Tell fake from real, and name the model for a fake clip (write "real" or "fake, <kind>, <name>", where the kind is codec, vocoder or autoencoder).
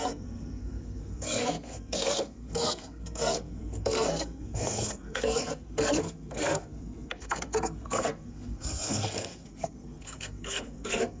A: fake, codec, SNAC